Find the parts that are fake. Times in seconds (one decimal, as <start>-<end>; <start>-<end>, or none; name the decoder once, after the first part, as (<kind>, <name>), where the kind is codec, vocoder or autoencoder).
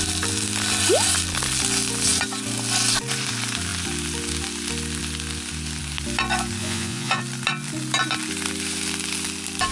6.6-7.2 (vocoder, Vocos)